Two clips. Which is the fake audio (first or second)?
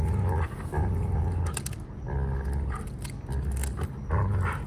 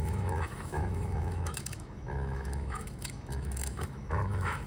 second